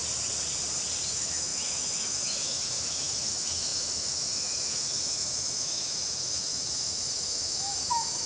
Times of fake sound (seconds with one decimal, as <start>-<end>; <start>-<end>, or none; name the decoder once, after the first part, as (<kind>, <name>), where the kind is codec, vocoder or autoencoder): 1.1-8.3 (autoencoder, DAC-VAE)